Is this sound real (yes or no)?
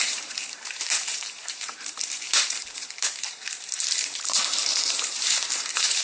no